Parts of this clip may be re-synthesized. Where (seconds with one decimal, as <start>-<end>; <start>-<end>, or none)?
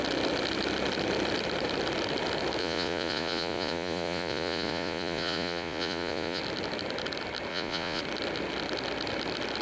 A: 2.6-6.4; 7.5-8.0